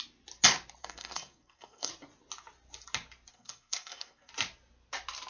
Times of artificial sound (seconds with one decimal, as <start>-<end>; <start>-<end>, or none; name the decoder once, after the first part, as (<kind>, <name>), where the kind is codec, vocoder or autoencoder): 0.8-1.9 (codec, SNAC); 3.3-4.3